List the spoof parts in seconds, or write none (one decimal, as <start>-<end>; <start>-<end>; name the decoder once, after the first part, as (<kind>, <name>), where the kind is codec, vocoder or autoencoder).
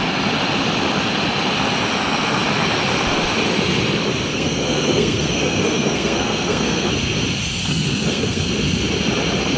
4.3-6.9 (codec, SNAC); 7.6-8.5